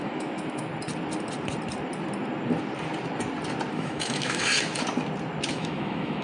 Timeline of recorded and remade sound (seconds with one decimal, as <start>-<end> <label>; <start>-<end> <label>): 0.0-0.7 remade; 0.7-3.7 recorded; 3.7-4.5 remade; 4.5-5.5 recorded; 5.5-6.2 remade

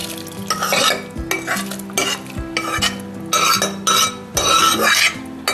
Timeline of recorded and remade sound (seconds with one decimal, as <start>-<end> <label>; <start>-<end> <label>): 0.0-5.5 recorded

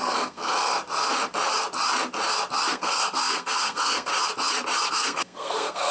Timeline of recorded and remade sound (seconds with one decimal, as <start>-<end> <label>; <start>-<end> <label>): 0.0-0.7 remade; 0.7-2.7 recorded; 2.7-4.1 remade; 4.1-4.9 recorded; 4.9-5.9 remade

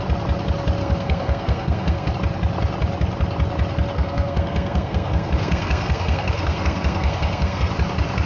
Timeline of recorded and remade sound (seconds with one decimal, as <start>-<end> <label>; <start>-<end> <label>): 0.0-0.8 recorded; 0.8-2.1 remade; 2.1-3.9 recorded; 3.9-7.7 remade; 7.7-8.3 recorded

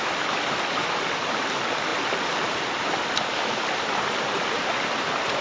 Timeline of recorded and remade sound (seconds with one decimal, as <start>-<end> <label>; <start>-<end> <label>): 0.0-5.4 recorded